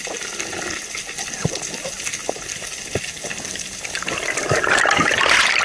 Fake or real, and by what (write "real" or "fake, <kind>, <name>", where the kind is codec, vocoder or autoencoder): real